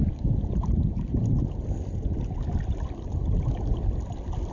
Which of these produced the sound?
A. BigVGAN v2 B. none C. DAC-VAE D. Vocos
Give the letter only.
B